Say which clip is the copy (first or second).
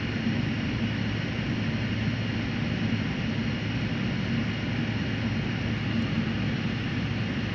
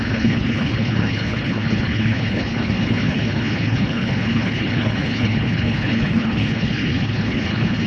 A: second